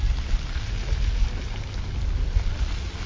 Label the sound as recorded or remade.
recorded